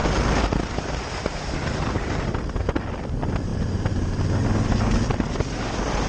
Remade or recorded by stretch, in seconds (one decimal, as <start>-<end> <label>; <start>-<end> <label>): 0.0-3.5 remade; 3.5-4.8 recorded; 4.8-6.1 remade